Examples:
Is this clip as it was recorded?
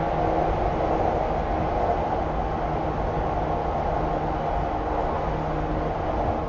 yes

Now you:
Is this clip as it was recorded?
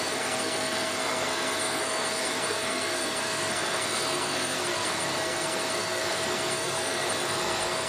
no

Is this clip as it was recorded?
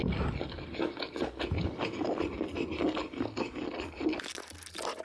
yes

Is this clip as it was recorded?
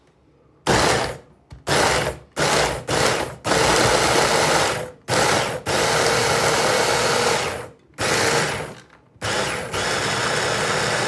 yes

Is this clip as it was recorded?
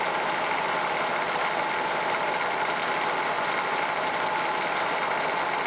yes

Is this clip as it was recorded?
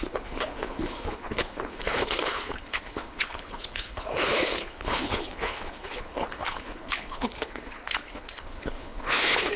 no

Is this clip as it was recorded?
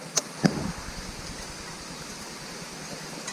yes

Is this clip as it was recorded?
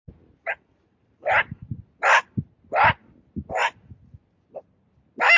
yes